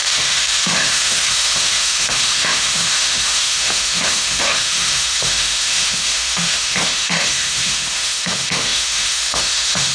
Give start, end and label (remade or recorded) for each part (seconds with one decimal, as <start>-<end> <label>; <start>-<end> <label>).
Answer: 0.0-9.9 remade